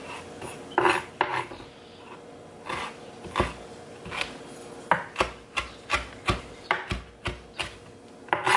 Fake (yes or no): no